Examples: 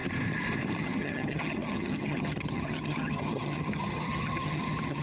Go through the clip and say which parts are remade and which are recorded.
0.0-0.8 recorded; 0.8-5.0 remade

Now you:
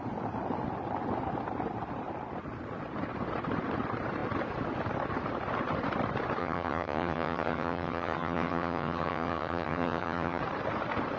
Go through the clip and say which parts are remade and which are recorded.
0.0-6.4 recorded; 6.4-10.4 remade; 10.4-11.2 recorded

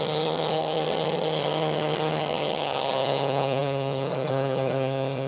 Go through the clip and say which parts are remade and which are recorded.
0.0-5.3 remade

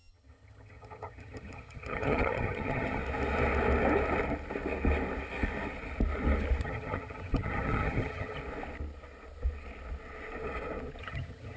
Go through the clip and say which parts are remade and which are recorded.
0.0-3.0 remade; 3.0-6.6 recorded; 6.6-8.4 remade; 8.4-11.0 recorded; 11.0-11.6 remade

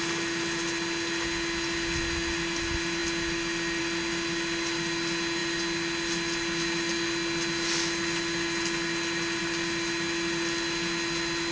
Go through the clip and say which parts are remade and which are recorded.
0.0-11.5 recorded

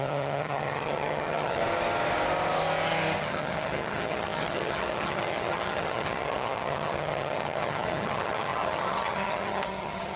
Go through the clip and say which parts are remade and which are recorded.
0.0-1.6 remade; 1.6-3.2 recorded; 3.2-10.2 remade

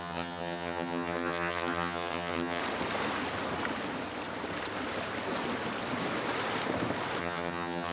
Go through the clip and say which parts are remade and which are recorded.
0.0-2.6 remade; 2.6-7.2 recorded; 7.2-7.9 remade